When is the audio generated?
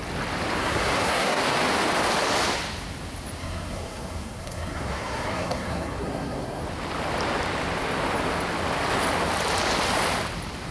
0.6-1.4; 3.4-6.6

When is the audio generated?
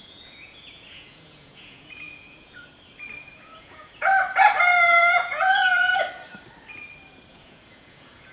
0.0-2.7; 3.2-4.1; 5.1-5.9; 7.3-8.3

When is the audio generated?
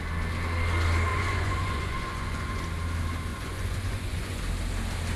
1.1-2.6; 3.3-4.4